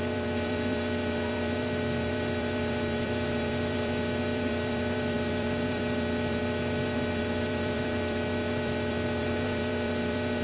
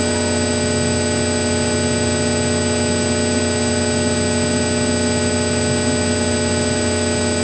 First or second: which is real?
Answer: second